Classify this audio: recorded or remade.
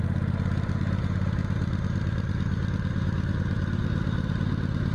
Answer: recorded